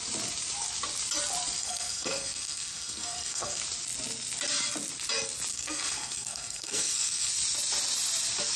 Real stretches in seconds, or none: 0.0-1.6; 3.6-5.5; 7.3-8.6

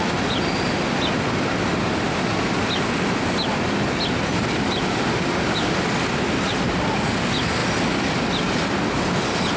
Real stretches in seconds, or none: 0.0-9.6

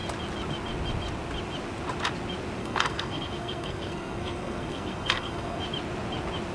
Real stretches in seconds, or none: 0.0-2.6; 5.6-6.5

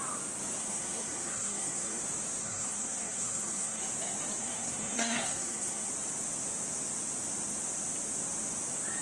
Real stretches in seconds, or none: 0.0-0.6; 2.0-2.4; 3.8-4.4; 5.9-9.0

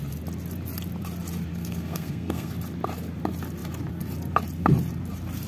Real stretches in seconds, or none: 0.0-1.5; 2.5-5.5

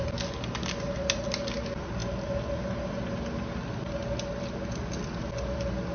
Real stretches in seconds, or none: 0.0-5.9

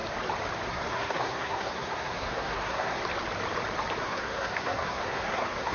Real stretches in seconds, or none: 0.0-0.7; 3.0-4.0